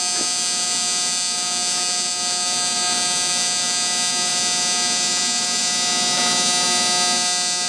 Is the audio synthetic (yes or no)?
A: no